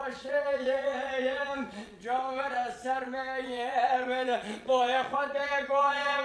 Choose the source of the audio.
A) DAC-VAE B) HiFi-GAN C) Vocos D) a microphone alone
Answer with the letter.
C